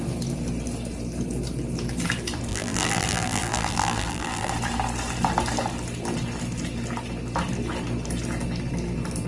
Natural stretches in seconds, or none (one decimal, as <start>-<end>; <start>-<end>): 0.0-2.5; 4.5-9.3